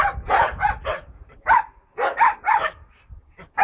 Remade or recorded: recorded